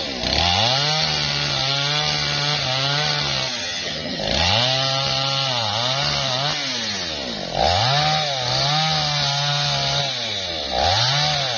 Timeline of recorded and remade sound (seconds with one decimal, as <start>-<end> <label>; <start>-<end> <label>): 0.0-3.6 recorded; 3.6-4.2 remade; 4.2-11.6 recorded